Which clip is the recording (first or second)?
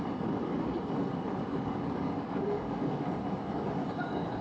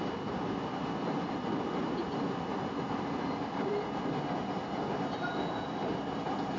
second